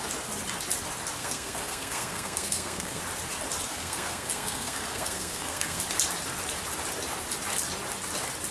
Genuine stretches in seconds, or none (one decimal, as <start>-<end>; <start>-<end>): 0.0-1.2; 3.0-3.7; 5.8-8.5